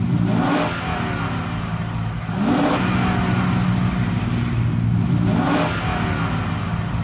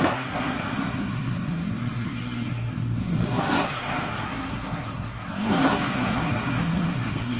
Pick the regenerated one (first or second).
second